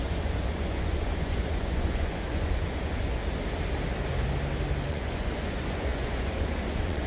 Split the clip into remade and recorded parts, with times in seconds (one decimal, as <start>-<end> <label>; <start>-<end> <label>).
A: 0.0-3.2 remade; 3.2-4.9 recorded; 4.9-7.1 remade